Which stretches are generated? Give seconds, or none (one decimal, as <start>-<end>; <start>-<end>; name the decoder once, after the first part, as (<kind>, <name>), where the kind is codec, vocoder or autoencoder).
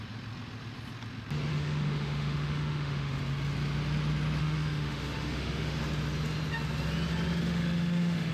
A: 1.5-3.2 (autoencoder, DAC-VAE); 4.4-5.8; 7.4-8.3